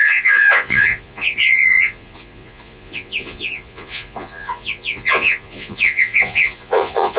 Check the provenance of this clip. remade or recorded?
remade